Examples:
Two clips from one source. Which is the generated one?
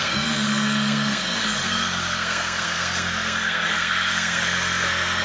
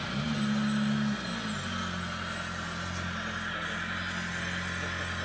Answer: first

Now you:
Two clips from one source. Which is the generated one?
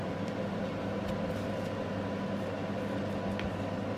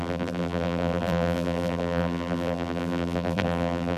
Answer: second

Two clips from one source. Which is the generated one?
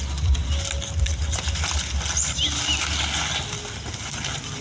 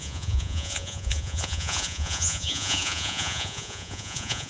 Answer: second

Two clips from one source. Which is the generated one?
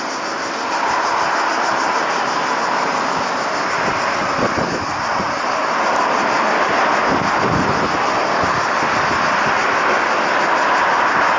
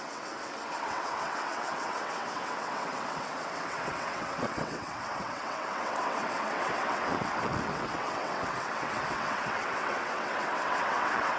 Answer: second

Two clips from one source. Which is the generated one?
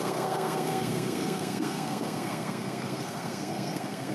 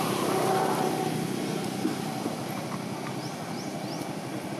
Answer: first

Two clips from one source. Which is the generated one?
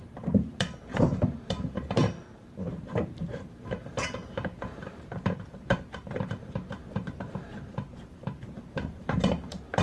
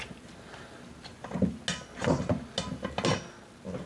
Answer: first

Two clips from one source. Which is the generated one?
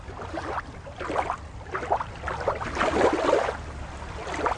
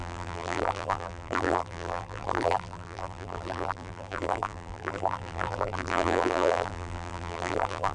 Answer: second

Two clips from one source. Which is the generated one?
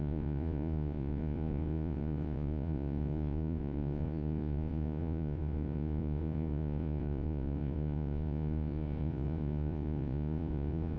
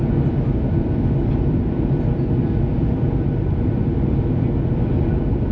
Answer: first